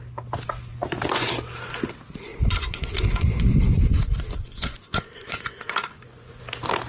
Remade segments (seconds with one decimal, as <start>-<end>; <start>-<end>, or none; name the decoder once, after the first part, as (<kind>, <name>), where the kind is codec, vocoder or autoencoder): 0.7-1.3 (vocoder, Vocos); 2.3-6.4